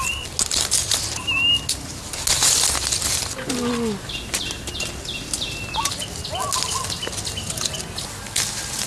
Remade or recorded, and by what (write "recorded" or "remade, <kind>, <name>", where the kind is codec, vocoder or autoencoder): recorded